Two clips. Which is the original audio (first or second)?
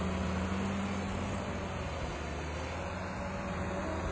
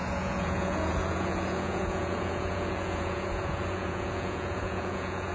first